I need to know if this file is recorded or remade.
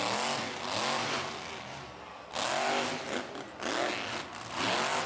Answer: recorded